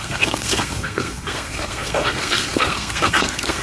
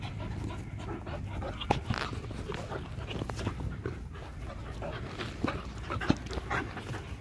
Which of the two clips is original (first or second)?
second